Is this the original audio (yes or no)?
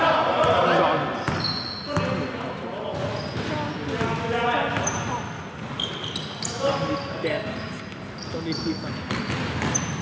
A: yes